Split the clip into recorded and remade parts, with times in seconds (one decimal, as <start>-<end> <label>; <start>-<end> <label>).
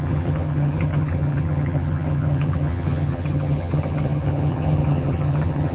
0.0-5.7 remade